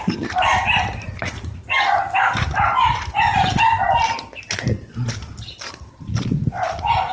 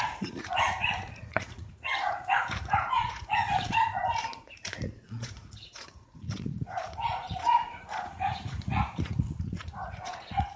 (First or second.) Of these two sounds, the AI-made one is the second